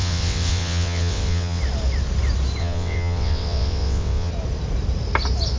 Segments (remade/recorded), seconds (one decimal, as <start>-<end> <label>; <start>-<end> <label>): 0.0-1.6 remade; 1.6-2.6 recorded; 2.6-4.3 remade; 4.3-5.6 recorded